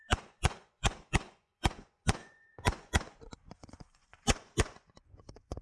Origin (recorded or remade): remade